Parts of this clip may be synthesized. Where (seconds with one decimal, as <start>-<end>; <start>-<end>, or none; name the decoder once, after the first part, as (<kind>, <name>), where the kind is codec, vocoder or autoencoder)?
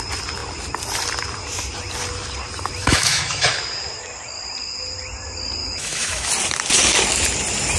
2.8-3.5 (autoencoder, DAC-VAE); 5.6-6.3